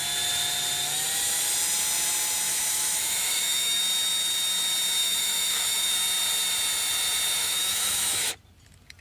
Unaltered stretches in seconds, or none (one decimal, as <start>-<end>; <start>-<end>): 0.0-2.5; 3.8-5.0; 5.9-7.4; 8.3-9.0